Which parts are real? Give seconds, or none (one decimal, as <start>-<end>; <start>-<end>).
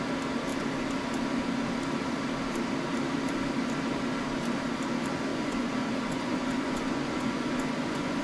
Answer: 0.0-5.3